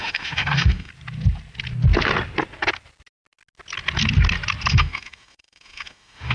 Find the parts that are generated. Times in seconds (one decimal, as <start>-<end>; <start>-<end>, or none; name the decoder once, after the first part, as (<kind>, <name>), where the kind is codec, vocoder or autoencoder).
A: 0.0-0.9 (autoencoder, DAC-VAE); 4.7-6.3